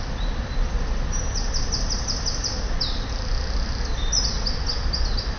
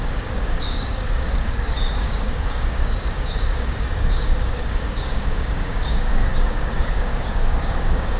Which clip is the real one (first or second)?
first